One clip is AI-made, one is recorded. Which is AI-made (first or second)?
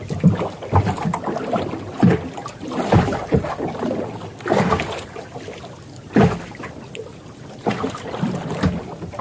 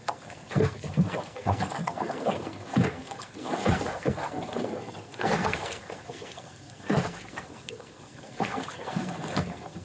second